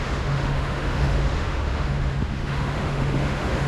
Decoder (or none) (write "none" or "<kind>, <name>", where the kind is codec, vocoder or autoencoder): autoencoder, DAC-VAE